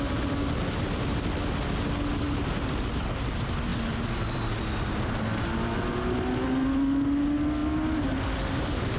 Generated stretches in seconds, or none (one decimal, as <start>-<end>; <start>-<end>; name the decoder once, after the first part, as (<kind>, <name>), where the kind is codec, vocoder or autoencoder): none